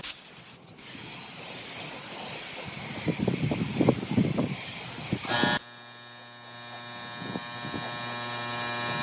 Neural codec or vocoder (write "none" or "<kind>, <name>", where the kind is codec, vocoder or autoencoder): none